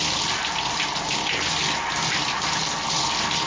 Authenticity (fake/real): real